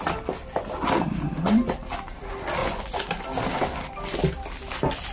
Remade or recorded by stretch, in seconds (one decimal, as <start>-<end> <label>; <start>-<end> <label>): 0.0-2.6 recorded; 2.6-3.2 remade; 3.2-5.1 recorded